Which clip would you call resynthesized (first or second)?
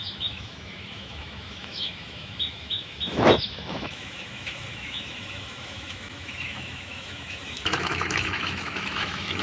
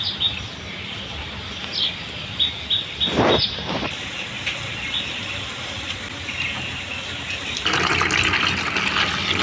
first